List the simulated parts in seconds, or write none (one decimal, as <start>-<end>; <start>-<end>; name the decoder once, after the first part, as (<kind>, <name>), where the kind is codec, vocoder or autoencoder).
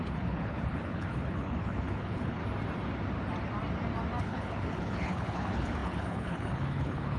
0.0-2.4 (codec, HILCodec); 4.2-7.2